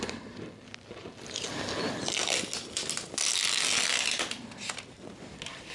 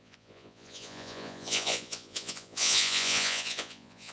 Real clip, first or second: first